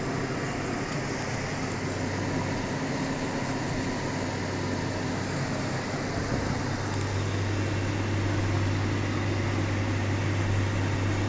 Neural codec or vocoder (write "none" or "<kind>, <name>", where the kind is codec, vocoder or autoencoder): none